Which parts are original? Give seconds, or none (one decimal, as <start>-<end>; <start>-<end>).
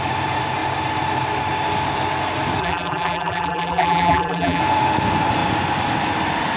0.0-2.6; 4.6-6.6